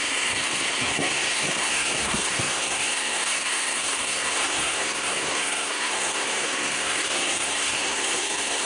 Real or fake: fake